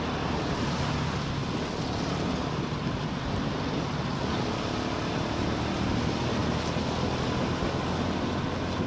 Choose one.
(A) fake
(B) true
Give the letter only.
B